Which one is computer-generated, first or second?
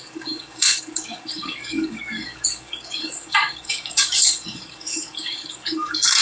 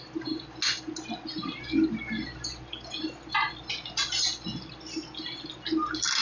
first